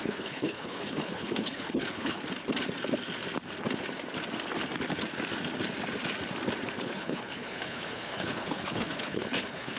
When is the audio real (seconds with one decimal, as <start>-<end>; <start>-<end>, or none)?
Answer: 2.2-6.8